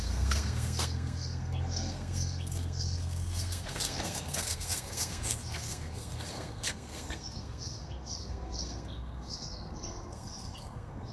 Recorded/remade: remade